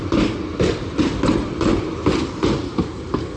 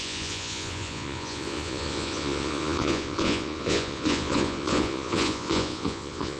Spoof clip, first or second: second